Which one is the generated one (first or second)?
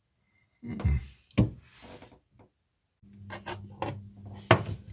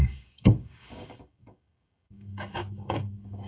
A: second